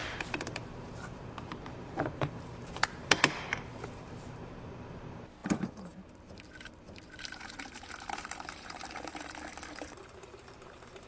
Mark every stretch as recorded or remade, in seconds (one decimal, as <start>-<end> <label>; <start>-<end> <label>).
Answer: 0.0-11.1 remade